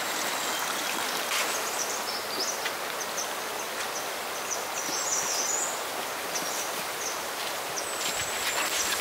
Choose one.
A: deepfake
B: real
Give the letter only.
B